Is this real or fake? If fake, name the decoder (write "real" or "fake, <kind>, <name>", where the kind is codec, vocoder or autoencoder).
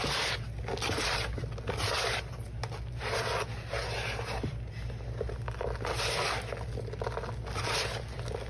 real